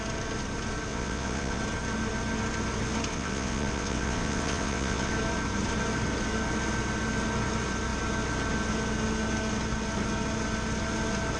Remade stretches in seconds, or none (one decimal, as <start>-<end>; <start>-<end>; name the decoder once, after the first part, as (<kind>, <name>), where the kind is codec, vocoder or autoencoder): 0.9-1.6 (vocoder, WaveNeXt); 3.1-5.1